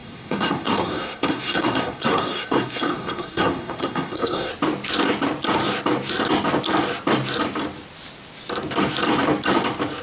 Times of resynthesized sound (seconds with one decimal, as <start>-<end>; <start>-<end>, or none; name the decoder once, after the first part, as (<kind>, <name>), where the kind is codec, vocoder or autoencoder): 0.0-4.5 (codec, SNAC)